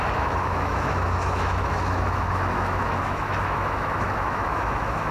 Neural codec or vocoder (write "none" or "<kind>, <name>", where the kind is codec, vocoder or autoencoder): autoencoder, DAC-VAE